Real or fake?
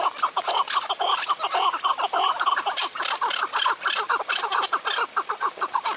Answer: real